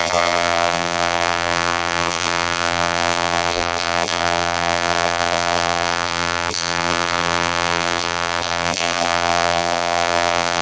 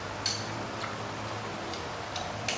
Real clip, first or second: second